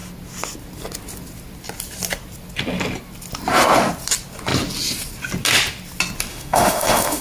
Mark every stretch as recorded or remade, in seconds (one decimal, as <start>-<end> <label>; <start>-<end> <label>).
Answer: 0.0-6.3 recorded; 6.3-7.2 remade